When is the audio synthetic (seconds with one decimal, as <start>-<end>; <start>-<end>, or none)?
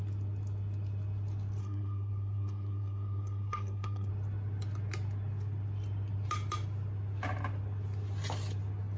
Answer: 1.6-4.1